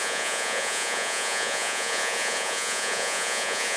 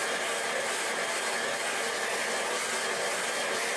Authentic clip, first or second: second